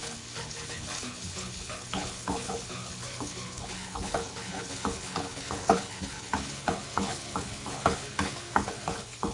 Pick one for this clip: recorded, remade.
remade